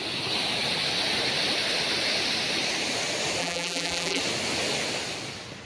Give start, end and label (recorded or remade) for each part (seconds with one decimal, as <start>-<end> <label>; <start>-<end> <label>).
0.0-3.4 recorded; 3.4-4.2 remade; 4.2-5.7 recorded